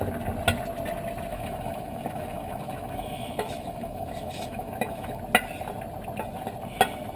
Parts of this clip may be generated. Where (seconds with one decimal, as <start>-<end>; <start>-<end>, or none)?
1.3-5.2